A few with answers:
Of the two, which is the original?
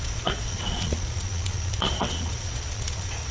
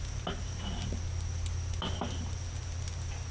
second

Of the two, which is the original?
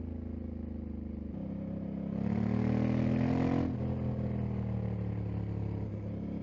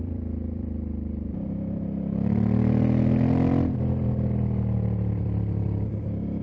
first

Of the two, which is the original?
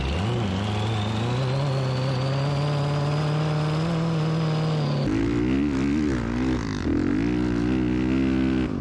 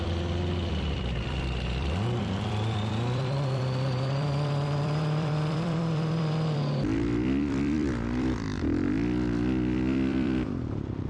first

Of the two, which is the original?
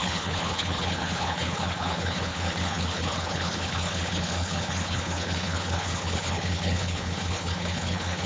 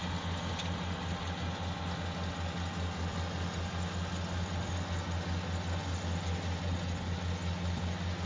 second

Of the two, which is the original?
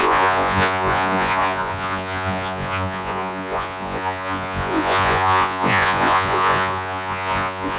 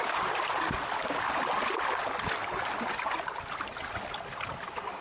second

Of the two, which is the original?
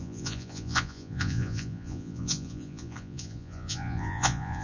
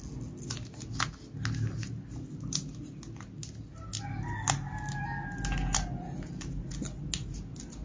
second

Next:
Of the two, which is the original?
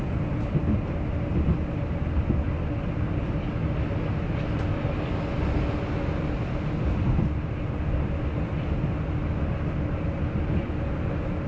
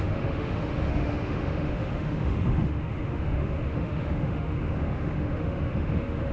first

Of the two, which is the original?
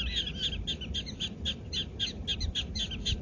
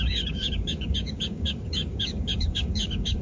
first